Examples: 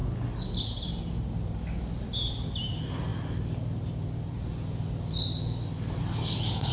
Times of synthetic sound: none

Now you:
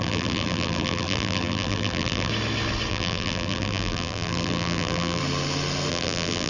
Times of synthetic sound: 0.0-2.3 (vocoder, BigVGAN v2); 2.9-5.2; 5.9-6.5